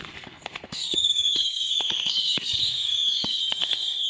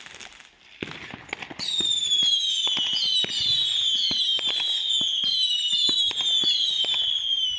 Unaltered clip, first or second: second